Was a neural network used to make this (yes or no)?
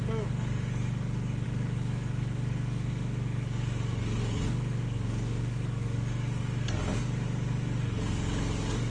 yes